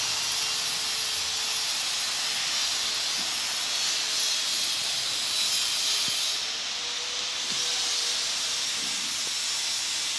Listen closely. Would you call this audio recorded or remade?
recorded